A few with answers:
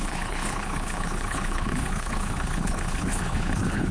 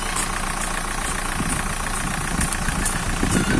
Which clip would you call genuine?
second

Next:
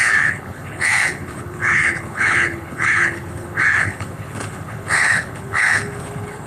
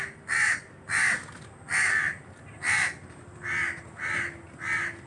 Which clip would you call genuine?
second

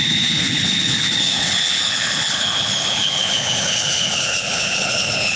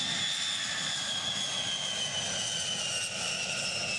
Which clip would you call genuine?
second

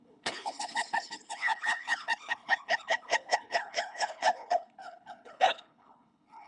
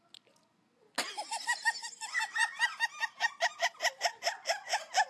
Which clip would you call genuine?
second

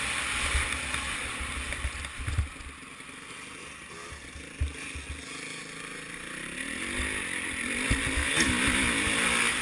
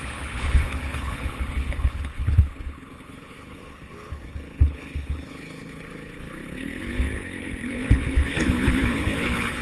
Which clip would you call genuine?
first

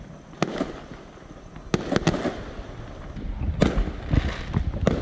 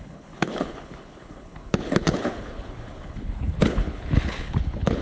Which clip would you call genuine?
first